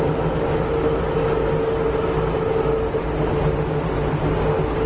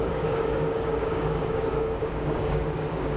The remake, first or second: second